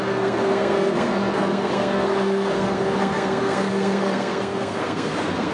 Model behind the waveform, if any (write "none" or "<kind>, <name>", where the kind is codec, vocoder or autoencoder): codec, SNAC